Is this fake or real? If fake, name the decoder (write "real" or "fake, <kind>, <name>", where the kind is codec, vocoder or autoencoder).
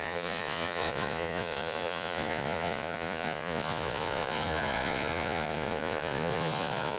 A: fake, vocoder, Vocos